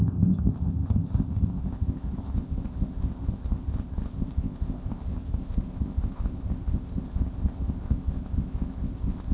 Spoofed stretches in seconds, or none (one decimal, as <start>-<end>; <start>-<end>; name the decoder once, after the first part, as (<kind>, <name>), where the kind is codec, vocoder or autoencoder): 0.0-9.3 (codec, ZipCodec)